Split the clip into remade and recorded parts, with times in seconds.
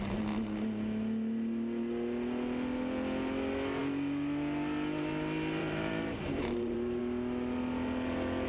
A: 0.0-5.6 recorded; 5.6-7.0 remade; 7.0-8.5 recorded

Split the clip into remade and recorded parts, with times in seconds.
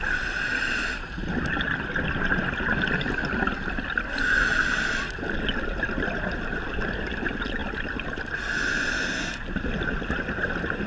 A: 0.0-10.9 recorded